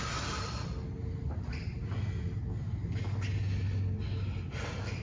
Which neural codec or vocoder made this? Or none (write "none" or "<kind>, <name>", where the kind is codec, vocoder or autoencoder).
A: none